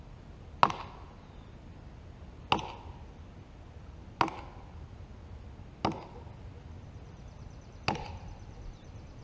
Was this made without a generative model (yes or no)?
yes